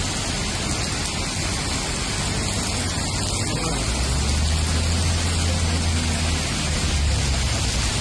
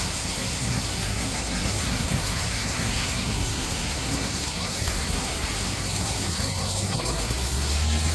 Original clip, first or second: first